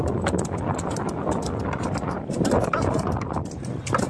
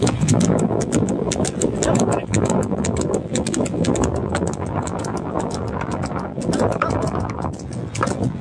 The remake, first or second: second